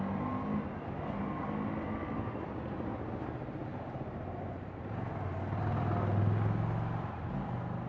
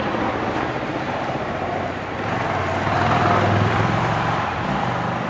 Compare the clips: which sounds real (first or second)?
first